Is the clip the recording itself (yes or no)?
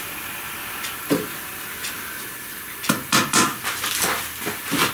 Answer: yes